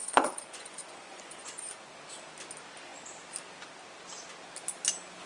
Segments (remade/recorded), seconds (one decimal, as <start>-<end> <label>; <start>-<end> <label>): 0.0-1.9 remade; 1.9-5.3 recorded